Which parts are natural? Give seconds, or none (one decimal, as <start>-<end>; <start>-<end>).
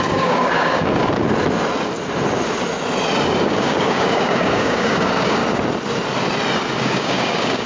1.0-3.4; 5.4-6.8